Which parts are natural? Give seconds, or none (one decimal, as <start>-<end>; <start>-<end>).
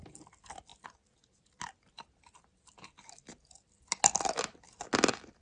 0.0-5.4